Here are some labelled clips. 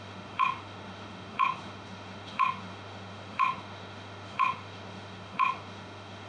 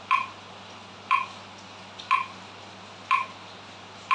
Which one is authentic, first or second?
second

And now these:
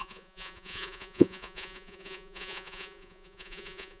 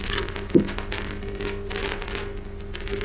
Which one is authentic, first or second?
second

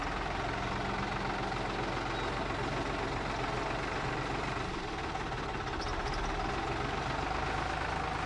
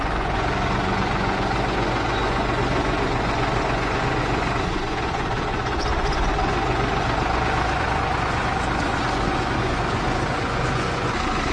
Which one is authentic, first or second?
first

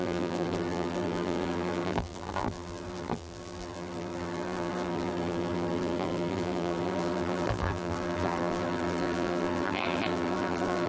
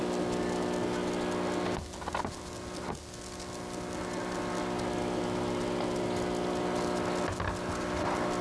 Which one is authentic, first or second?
second